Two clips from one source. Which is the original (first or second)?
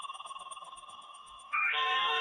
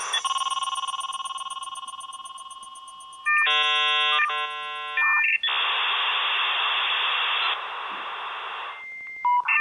second